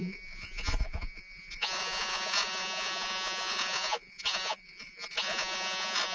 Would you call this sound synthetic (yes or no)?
yes